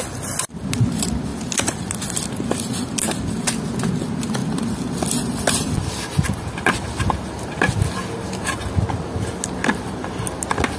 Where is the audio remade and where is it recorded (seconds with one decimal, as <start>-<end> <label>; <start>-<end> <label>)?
0.0-10.8 recorded